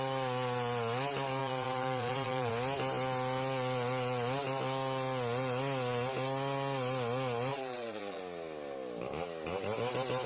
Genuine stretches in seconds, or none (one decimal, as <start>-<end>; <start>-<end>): 0.0-1.4; 2.5-7.5; 8.2-10.3